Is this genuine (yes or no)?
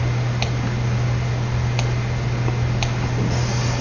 yes